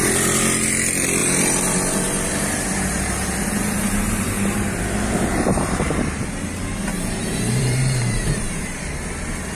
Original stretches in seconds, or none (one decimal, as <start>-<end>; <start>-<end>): 0.0-1.2; 4.7-6.9; 8.6-9.5